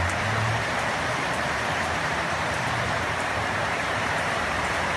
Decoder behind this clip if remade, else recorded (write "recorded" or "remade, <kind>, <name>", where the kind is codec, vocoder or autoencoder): remade, vocoder, BigVGAN v2